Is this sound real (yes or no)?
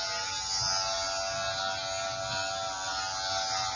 yes